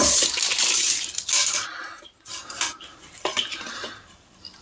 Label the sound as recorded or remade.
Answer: recorded